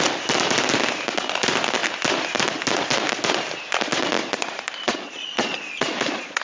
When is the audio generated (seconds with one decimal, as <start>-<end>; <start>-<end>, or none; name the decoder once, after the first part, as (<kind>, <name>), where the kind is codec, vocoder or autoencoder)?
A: 4.2-6.4 (vocoder, Vocos)